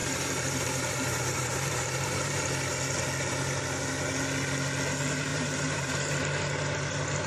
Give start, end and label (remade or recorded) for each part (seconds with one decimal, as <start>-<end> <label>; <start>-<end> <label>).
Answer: 0.0-2.4 remade; 2.4-5.3 recorded; 5.3-6.0 remade; 6.0-7.3 recorded